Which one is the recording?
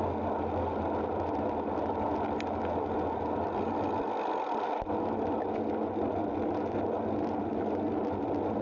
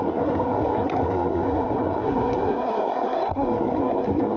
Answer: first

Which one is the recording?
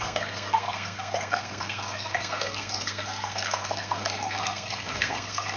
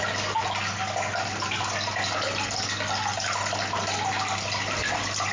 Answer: second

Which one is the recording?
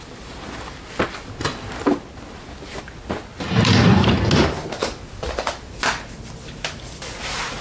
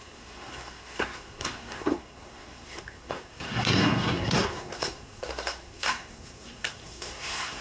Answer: first